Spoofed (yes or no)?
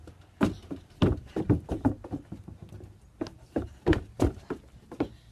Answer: no